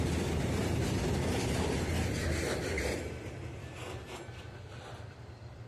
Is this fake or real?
real